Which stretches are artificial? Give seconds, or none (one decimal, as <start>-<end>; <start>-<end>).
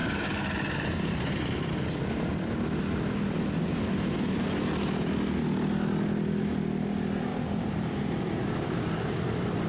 0.0-1.6; 7.3-9.7